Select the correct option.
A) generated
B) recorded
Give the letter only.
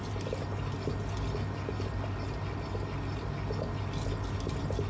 B